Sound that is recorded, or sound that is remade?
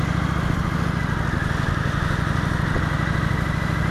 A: recorded